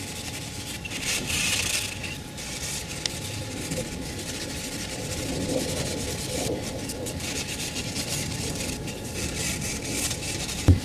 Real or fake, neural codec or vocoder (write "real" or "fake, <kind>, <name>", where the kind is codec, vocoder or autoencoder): fake, vocoder, BigVGAN v2